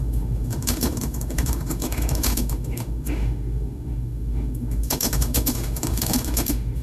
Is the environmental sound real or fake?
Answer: fake